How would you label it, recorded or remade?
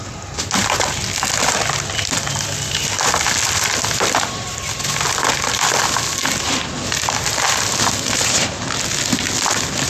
recorded